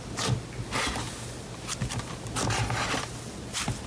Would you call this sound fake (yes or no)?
no